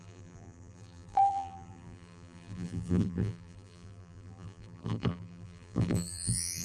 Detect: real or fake fake